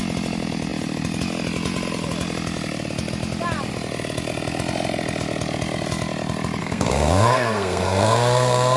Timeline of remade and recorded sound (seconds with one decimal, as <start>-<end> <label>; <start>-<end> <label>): 0.0-6.6 recorded; 6.6-8.8 remade